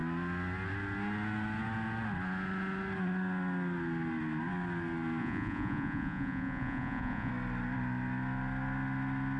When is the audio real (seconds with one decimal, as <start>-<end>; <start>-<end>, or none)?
0.0-5.2; 7.3-9.4